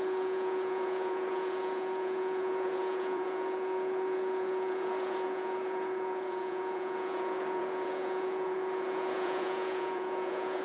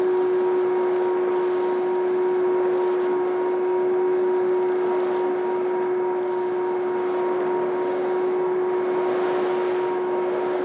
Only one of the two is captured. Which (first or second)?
second